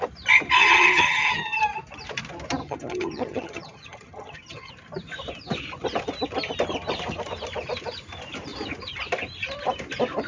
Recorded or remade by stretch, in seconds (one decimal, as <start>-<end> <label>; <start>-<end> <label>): 0.0-0.6 recorded; 0.6-1.6 remade; 1.6-2.6 recorded; 2.6-4.7 remade; 4.7-10.3 recorded